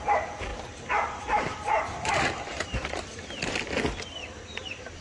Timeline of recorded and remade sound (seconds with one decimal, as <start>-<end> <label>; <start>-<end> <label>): 0.0-0.5 recorded; 0.5-3.5 remade; 3.5-5.0 recorded